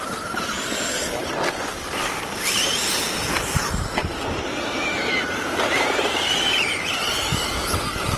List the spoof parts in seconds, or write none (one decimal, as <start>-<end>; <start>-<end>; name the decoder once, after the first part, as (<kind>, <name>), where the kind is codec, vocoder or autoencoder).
2.0-6.4 (vocoder, BigVGAN v2)